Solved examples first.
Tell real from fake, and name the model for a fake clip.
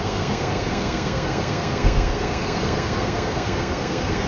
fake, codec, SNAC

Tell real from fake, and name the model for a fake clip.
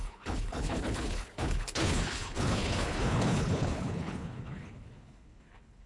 fake, codec, HILCodec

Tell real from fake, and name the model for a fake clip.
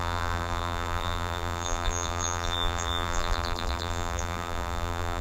fake, vocoder, BigVGAN v2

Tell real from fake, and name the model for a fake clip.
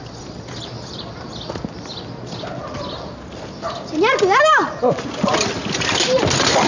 real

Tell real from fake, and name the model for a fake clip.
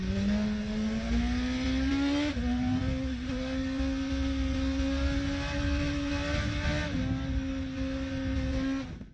real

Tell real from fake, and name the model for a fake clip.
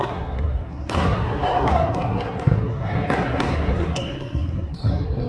fake, codec, SNAC